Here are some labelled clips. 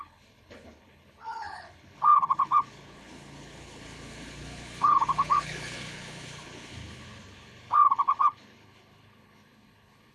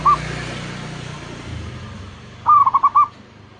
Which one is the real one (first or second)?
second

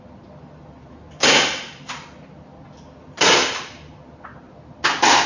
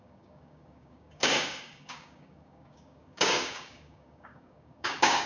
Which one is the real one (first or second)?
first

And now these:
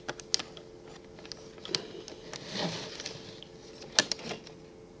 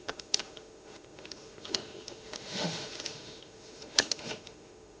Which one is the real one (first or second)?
first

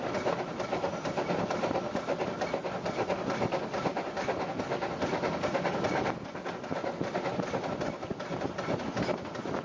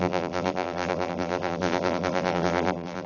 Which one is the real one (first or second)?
first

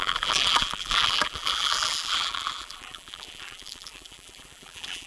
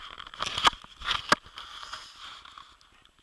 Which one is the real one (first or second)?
second